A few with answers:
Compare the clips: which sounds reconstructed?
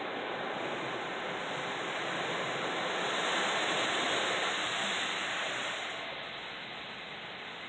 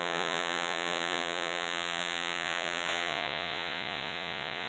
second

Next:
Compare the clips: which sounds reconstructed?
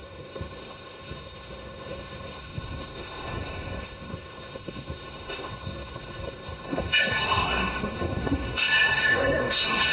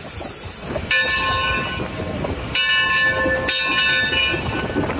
first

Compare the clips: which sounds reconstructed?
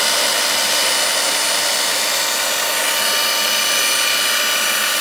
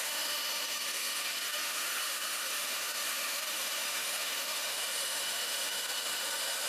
second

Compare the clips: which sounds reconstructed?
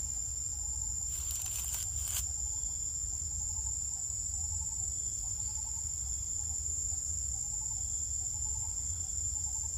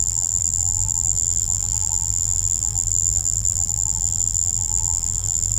second